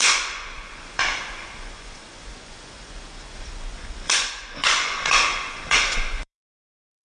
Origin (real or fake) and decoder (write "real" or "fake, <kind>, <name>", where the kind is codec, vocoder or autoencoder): fake, vocoder, Vocos